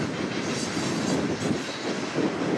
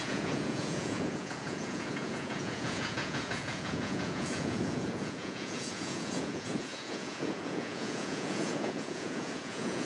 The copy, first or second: second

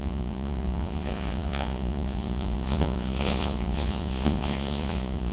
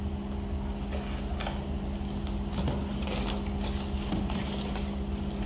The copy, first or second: first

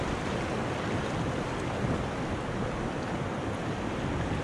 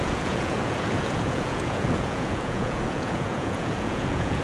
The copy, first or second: second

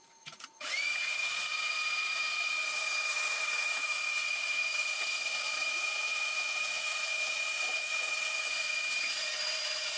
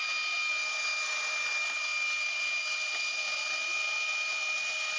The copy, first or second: first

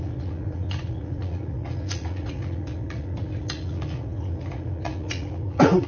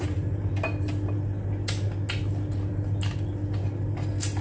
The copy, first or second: first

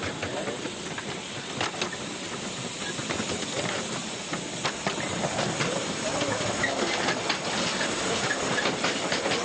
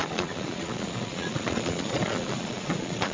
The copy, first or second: second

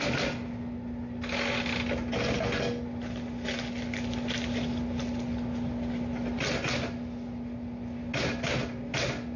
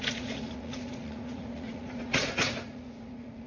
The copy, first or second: second